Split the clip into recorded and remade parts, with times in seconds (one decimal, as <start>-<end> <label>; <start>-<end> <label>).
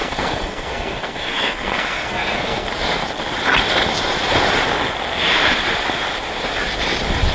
0.0-2.7 remade; 2.7-7.3 recorded